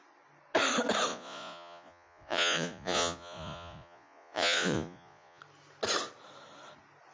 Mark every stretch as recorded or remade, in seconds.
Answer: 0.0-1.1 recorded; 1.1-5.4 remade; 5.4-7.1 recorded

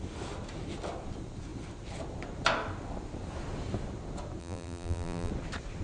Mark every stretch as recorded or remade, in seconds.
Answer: 0.0-4.4 recorded; 4.4-5.3 remade; 5.3-5.8 recorded

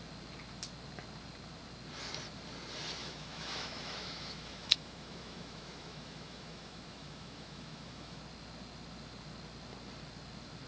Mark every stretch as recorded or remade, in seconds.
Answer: 0.0-3.0 recorded; 3.0-8.2 remade; 8.2-10.7 recorded

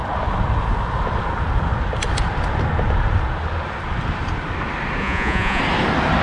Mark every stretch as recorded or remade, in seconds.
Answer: 0.0-5.0 recorded; 5.0-5.6 remade; 5.6-6.2 recorded

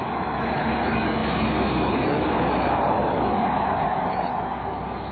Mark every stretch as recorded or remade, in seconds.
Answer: 0.0-5.1 remade

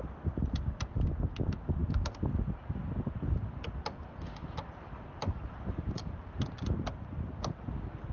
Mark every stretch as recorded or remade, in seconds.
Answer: 0.0-8.1 recorded

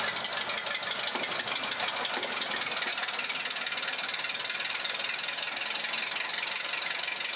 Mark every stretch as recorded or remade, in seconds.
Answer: 0.0-7.4 recorded

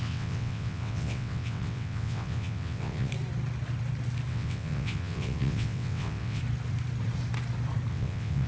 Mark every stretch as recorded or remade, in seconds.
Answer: 0.0-3.1 remade; 3.1-4.3 recorded; 4.3-6.4 remade; 6.4-7.9 recorded; 7.9-8.5 remade